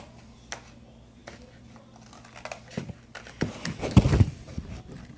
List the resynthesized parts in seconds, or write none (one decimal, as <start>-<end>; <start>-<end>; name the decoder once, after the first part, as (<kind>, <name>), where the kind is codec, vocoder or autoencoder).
none